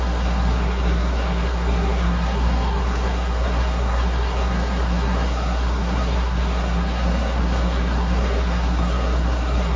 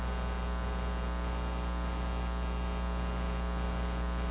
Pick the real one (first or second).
second